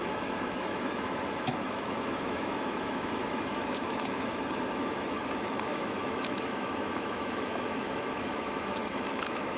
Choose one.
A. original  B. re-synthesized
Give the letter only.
B